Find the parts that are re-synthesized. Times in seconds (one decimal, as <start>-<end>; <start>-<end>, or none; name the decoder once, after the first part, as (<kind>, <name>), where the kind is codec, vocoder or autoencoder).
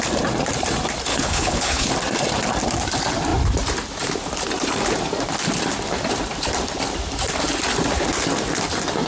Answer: 1.1-1.9 (codec, HILCodec)